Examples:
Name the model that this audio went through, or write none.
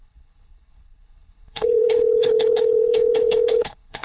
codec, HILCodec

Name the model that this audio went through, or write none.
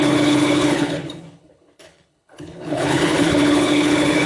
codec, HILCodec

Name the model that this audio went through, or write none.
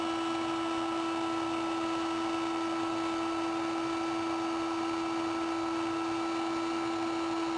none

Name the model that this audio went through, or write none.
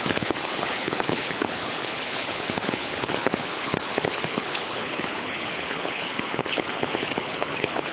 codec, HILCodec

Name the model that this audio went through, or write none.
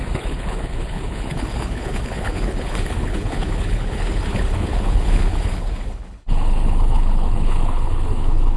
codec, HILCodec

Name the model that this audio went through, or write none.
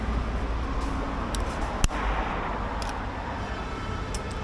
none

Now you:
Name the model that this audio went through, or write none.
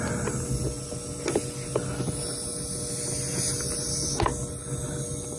none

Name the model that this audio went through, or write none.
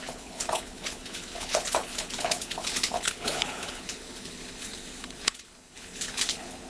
codec, HILCodec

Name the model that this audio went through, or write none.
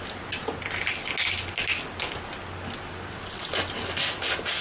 none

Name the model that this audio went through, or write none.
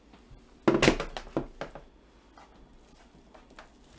none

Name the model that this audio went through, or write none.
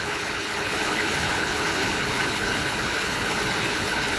codec, HILCodec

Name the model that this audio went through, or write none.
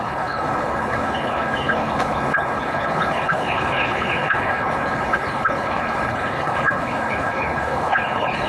codec, HILCodec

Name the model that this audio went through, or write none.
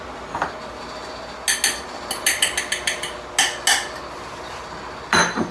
none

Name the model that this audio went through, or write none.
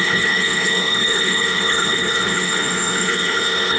codec, HILCodec